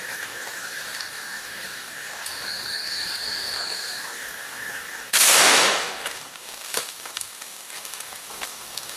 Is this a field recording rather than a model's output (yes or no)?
no